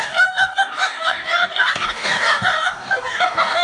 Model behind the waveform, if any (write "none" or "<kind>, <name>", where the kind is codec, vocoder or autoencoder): codec, DAC